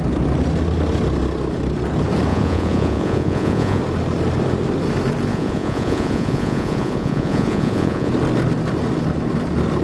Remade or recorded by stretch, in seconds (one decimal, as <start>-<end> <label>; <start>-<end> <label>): 0.0-2.3 recorded; 2.3-3.8 remade; 3.8-5.3 recorded; 5.3-8.1 remade; 8.1-9.8 recorded